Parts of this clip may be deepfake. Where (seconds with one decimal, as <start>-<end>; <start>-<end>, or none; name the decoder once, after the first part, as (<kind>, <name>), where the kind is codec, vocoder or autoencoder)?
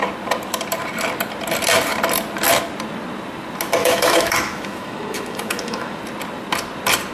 3.8-6.0 (autoencoder, DAC-VAE)